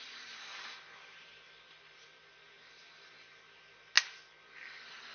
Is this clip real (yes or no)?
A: yes